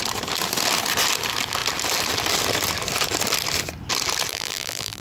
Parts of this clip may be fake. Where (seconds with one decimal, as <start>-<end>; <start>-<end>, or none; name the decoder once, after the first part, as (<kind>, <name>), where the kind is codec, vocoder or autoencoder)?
4.3-5.0 (vocoder, BigVGAN v2)